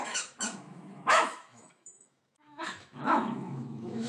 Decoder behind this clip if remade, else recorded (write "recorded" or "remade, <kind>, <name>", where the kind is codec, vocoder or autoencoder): remade, autoencoder, DAC-VAE